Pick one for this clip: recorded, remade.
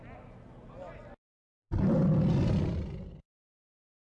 recorded